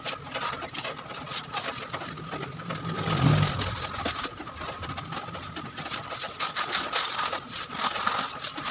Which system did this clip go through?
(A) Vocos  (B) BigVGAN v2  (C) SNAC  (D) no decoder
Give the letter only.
D